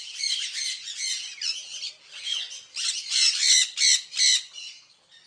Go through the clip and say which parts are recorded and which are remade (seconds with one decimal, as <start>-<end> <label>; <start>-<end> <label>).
0.0-5.3 recorded